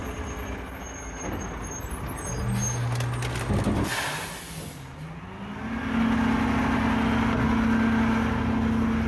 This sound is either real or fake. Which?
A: real